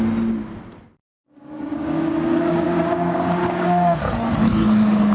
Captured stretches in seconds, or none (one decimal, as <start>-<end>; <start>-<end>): 0.0-1.0; 4.1-5.1